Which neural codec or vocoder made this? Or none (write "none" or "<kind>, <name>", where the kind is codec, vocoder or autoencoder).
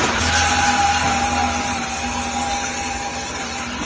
none